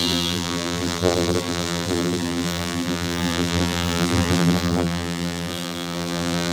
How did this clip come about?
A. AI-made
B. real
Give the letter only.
A